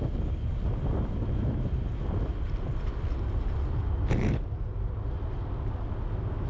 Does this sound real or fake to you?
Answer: real